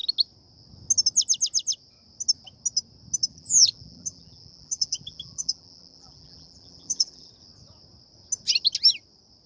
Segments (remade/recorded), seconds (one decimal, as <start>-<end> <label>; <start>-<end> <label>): 0.0-3.3 recorded; 3.3-7.3 remade; 7.3-9.5 recorded